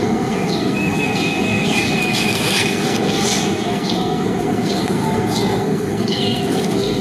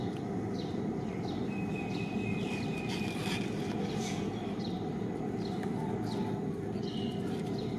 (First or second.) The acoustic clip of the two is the second